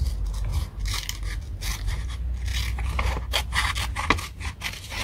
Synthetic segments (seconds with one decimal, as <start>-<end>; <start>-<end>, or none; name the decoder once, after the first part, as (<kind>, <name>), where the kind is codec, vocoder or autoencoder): none